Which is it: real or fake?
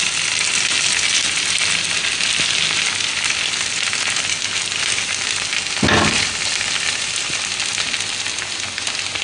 real